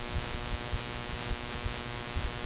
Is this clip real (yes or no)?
yes